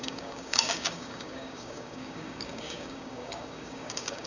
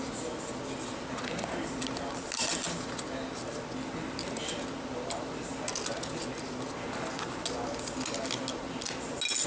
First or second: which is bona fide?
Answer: second